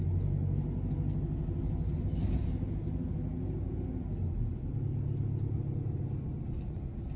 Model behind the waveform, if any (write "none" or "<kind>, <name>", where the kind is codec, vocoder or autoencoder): none